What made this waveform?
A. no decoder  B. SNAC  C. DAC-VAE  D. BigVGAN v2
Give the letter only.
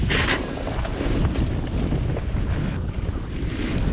A